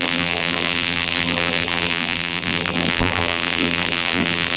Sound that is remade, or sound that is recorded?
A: remade